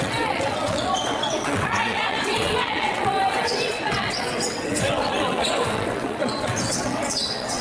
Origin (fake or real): fake